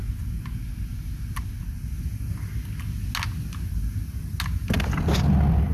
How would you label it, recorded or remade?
recorded